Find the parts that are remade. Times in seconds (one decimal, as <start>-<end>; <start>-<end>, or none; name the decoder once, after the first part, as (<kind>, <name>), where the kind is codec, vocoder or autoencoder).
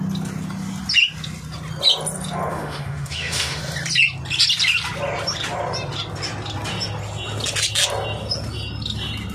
2.5-3.6 (autoencoder, DAC-VAE)